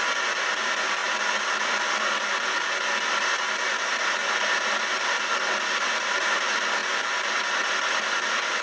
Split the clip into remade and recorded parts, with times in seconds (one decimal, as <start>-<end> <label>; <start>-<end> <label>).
0.0-8.6 recorded